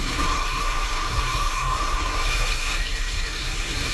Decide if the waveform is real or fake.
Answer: fake